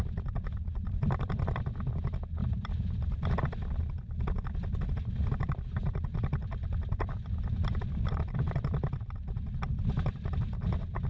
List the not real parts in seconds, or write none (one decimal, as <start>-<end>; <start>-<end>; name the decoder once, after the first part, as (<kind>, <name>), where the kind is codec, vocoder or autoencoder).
none